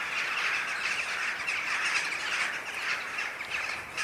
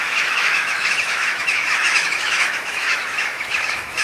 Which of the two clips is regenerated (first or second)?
second